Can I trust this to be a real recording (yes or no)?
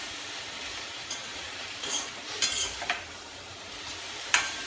no